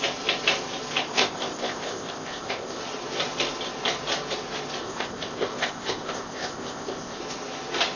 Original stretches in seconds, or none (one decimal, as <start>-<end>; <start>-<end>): 0.0-1.0; 2.8-4.8; 7.2-8.0